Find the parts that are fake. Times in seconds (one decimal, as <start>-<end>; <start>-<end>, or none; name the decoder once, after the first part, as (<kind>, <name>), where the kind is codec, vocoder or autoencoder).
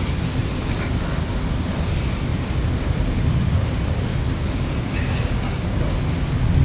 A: 4.1-6.1 (codec, DAC)